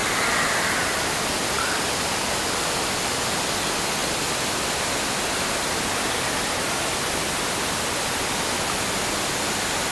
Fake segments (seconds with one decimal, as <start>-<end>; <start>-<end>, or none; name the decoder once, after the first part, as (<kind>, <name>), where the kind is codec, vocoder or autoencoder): 0.0-3.5 (vocoder, BigVGAN v2)